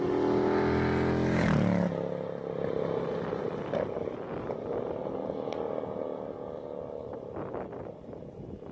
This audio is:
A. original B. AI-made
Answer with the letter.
A